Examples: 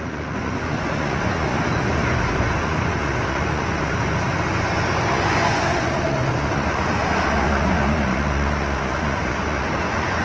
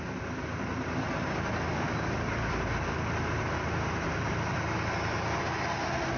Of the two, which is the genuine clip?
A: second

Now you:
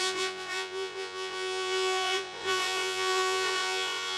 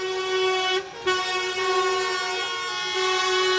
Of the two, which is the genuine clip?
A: second